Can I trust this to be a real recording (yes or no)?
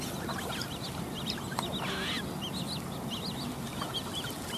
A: yes